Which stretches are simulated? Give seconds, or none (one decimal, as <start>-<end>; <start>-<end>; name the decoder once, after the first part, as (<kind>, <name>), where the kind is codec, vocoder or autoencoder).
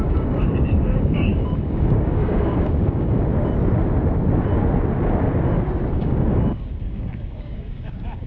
0.0-3.2 (codec, DAC); 5.9-8.3